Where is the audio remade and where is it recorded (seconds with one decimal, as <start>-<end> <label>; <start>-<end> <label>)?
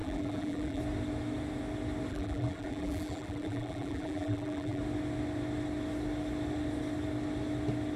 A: 0.0-0.8 remade; 0.8-2.1 recorded; 2.1-4.8 remade; 4.8-8.0 recorded